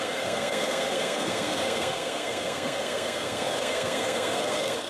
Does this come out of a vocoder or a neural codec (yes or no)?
yes